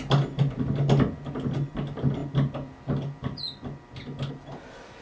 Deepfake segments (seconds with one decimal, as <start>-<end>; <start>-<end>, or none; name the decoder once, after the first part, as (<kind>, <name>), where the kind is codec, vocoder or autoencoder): none